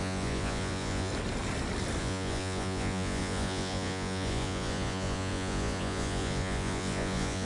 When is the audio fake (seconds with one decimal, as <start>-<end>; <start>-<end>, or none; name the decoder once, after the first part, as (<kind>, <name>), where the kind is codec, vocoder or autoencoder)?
0.0-1.1 (vocoder, Vocos); 2.0-7.5